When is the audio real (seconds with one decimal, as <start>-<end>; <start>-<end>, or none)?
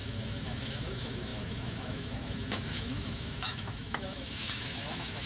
none